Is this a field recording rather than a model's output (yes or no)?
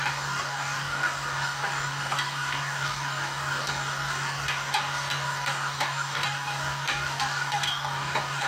no